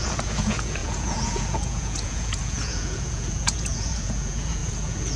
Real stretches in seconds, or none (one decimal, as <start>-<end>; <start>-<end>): none